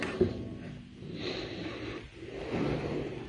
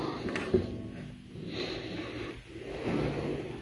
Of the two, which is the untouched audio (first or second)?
second